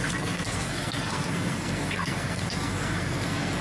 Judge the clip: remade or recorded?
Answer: remade